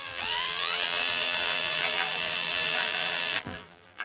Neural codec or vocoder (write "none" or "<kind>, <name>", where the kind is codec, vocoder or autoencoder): vocoder, BigVGAN v2